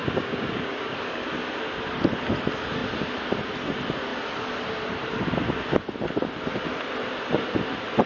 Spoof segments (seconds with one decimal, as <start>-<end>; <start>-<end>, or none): 0.0-1.3